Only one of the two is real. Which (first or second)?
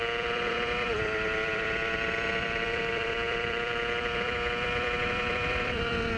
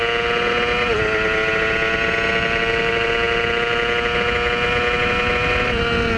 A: second